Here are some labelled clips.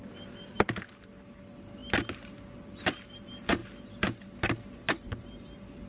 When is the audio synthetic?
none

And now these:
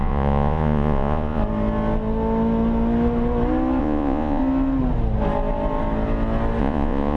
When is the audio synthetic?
0.0-1.4 (vocoder, Vocos); 3.8-4.4; 6.6-7.2

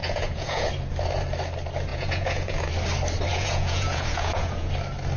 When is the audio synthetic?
0.0-0.7 (vocoder, Vocos); 1.9-2.7; 3.3-4.7